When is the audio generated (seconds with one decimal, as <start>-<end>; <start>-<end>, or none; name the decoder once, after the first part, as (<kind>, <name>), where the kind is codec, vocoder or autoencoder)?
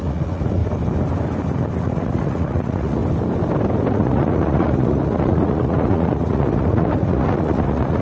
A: 0.0-0.6 (vocoder, Vocos); 1.8-3.0; 3.9-8.0